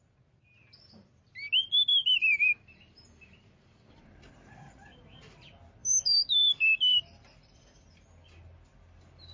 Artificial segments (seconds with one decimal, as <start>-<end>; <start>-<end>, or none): 1.9-4.0; 5.8-7.8